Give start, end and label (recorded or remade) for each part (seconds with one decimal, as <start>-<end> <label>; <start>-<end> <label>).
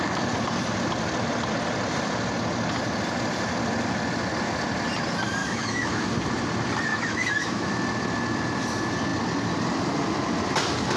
0.0-5.4 recorded; 5.4-6.1 remade; 6.1-6.9 recorded; 6.9-7.7 remade; 7.7-11.0 recorded